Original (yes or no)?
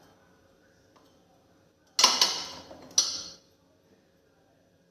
yes